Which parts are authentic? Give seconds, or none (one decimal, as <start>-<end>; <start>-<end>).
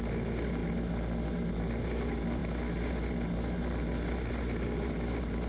0.0-5.5